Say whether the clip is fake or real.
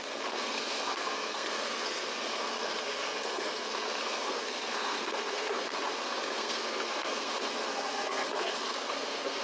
fake